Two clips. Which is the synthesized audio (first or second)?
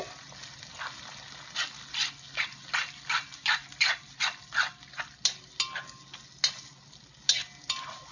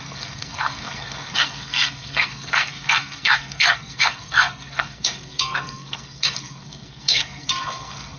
second